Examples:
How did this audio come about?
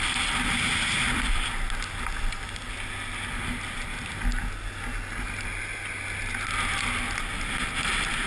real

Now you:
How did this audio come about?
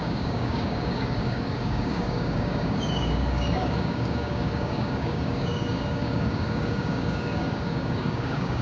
fake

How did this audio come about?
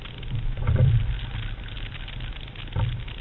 real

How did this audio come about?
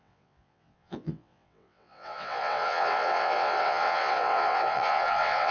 fake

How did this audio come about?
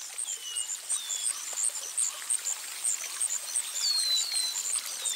real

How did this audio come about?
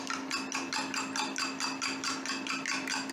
real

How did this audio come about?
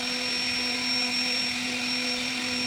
real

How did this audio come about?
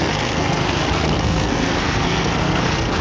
fake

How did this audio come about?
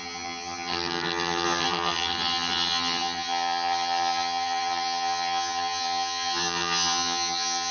fake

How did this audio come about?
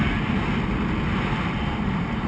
real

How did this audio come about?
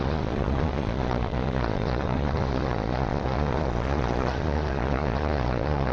fake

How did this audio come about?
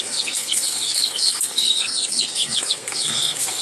fake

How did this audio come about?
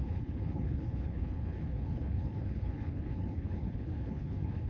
fake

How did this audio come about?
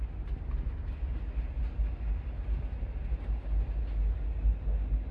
real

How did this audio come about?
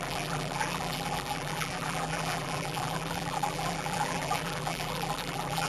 fake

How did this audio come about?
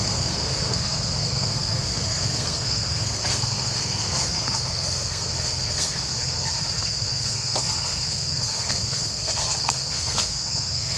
fake